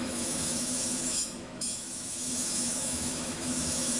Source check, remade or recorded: remade